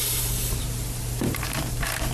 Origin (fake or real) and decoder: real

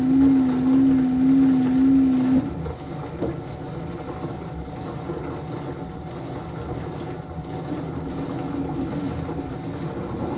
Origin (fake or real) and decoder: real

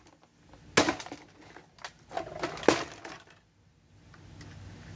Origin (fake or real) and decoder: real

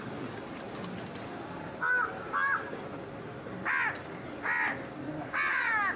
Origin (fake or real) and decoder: real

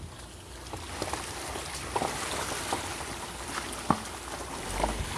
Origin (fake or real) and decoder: real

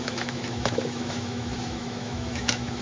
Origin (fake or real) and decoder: fake, autoencoder, DAC-VAE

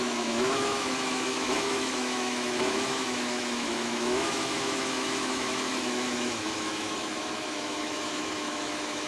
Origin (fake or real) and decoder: fake, autoencoder, DAC-VAE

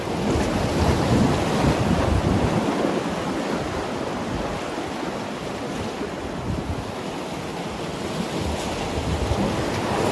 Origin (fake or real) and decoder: real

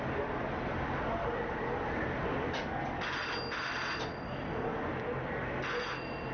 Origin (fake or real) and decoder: real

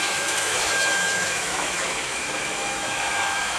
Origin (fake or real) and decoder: fake, autoencoder, DAC-VAE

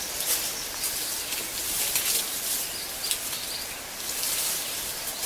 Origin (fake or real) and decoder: real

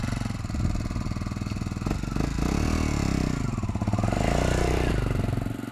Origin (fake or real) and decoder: real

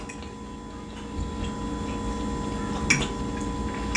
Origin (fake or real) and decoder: real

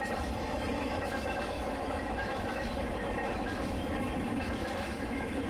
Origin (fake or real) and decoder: fake, autoencoder, DAC-VAE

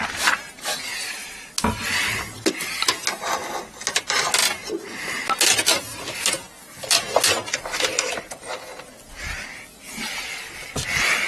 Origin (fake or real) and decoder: real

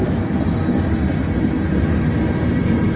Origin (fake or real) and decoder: real